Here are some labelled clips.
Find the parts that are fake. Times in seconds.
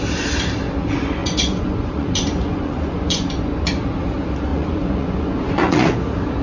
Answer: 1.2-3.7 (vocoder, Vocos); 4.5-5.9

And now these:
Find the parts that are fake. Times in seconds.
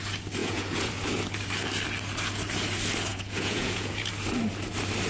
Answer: 0.4-0.9 (vocoder, Vocos); 3.1-4.1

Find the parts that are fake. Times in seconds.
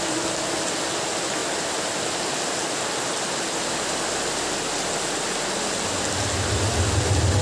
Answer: none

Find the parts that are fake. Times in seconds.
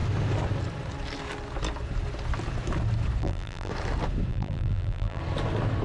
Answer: 3.2-3.7 (vocoder, BigVGAN v2); 4.3-5.2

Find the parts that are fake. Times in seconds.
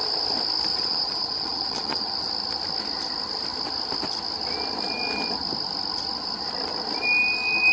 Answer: 0.7-2.1 (vocoder, Vocos)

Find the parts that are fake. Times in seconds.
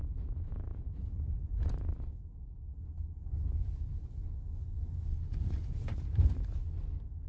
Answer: 5.1-5.7 (codec, HILCodec)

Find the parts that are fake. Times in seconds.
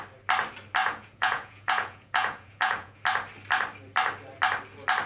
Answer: 0.8-3.0 (vocoder, Vocos)